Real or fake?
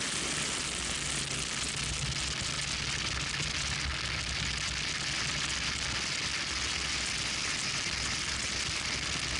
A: real